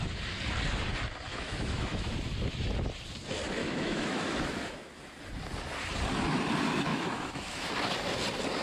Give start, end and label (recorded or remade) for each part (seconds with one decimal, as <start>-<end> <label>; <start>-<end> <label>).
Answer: 0.0-1.3 recorded; 1.3-2.1 remade; 2.1-3.6 recorded; 3.6-4.9 remade; 4.9-6.9 recorded; 6.9-7.7 remade; 7.7-8.6 recorded